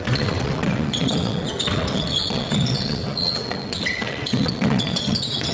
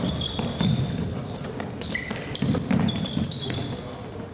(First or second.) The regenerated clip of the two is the first